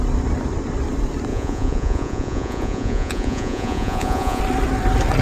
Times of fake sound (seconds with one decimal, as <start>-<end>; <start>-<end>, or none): 1.3-4.4